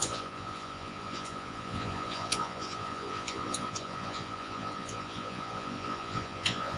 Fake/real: fake